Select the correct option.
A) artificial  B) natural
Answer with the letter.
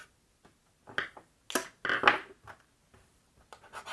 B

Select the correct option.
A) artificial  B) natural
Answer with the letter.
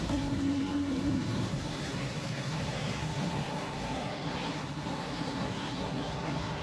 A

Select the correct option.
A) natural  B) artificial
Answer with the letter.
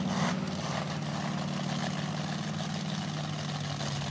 A